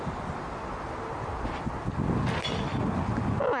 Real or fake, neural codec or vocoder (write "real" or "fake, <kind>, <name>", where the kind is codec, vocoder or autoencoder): real